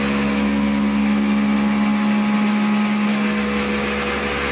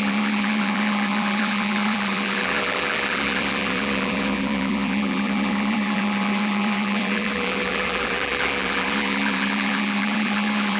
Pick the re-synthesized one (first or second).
second